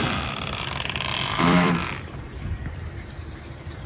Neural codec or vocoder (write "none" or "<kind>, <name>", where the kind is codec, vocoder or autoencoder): vocoder, BigVGAN v2